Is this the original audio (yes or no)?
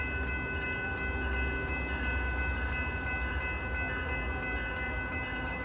yes